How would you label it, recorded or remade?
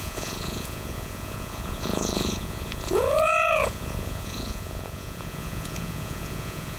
remade